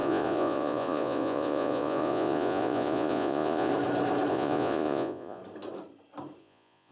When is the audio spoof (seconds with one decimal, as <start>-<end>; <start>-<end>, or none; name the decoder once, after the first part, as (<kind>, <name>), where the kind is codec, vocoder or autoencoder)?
0.0-3.7 (vocoder, Vocos); 4.3-5.4; 6.4-6.9